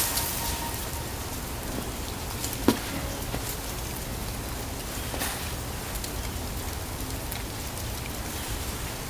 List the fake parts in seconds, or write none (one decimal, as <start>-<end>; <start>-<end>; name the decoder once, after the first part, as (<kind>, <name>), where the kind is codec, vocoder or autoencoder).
none